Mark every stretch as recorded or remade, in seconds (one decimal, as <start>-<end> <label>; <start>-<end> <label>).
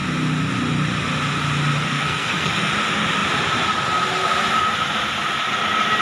0.0-1.8 recorded; 1.8-2.7 remade; 2.7-6.0 recorded